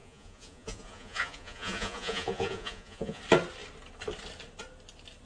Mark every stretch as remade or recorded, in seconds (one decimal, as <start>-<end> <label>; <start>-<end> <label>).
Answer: 0.0-3.2 remade; 3.2-5.3 recorded